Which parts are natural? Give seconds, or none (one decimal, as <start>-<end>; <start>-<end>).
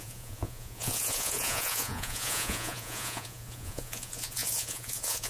none